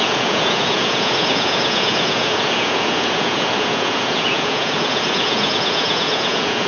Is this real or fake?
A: fake